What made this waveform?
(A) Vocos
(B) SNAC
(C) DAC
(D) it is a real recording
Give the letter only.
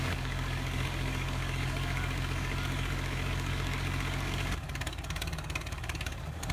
C